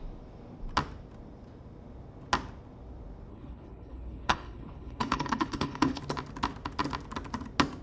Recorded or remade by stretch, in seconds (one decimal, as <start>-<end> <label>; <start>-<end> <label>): 0.0-3.3 recorded; 3.3-6.0 remade; 6.0-7.8 recorded